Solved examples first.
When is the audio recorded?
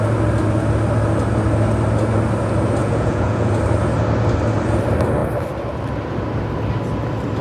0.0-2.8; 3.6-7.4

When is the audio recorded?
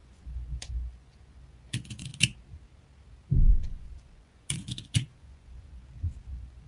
2.1-3.3; 5.8-6.3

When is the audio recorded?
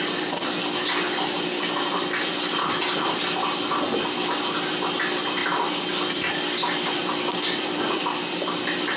0.0-9.0